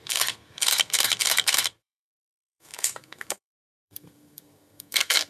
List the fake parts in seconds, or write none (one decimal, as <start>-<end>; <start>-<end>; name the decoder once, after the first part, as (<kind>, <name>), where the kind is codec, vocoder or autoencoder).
0.0-5.3 (codec, SNAC)

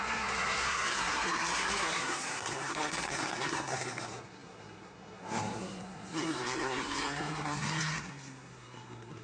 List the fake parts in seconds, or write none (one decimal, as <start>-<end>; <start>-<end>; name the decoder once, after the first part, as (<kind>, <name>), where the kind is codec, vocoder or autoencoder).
0.0-9.2 (codec, SNAC)

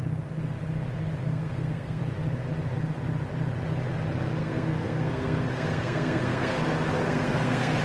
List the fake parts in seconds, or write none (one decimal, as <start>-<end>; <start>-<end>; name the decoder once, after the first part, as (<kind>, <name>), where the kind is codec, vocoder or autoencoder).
1.2-2.0 (codec, SNAC); 4.4-6.6; 7.0-7.8

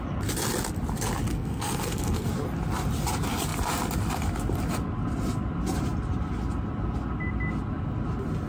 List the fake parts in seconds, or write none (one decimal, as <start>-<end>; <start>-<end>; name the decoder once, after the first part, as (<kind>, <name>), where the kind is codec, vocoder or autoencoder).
1.3-2.3 (codec, SNAC)

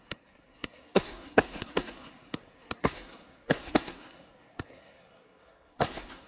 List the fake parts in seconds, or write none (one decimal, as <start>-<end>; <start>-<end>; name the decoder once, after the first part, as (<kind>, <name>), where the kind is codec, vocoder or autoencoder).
0.0-6.3 (codec, SNAC)

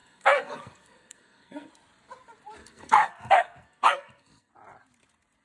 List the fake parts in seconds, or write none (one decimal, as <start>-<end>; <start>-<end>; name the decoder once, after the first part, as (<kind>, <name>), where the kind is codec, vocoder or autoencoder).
0.0-1.7 (codec, SNAC); 2.6-4.5

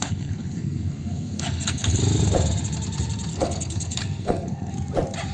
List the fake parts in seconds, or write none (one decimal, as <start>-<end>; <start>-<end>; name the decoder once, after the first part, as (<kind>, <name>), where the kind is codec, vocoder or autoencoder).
0.0-2.0 (codec, SNAC); 3.3-4.7

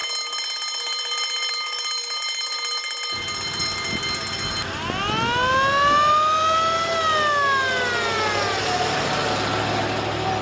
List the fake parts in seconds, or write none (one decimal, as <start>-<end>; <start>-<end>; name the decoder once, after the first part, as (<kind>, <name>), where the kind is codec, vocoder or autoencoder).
none